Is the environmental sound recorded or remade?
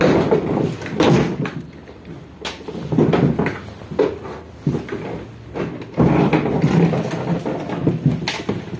recorded